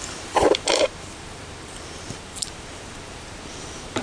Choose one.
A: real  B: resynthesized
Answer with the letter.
B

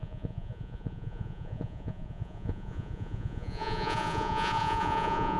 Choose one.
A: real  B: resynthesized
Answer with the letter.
B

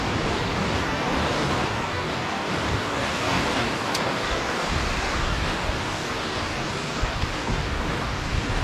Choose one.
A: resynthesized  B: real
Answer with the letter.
A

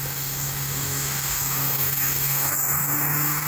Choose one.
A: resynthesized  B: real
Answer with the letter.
A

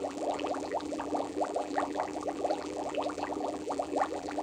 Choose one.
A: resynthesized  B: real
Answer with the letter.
A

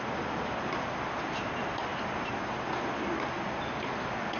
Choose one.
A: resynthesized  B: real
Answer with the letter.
B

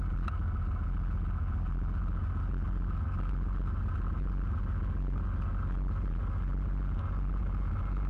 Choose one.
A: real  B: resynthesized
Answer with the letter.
A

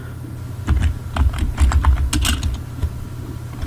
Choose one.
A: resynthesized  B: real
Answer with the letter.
B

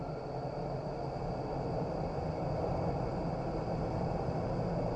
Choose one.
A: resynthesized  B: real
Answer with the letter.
B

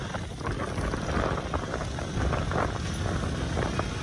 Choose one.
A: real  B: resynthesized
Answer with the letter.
A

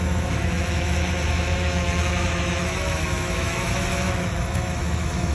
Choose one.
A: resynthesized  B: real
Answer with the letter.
A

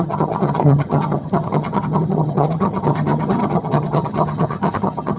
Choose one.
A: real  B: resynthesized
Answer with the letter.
B